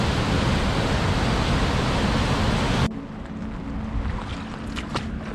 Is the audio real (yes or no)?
yes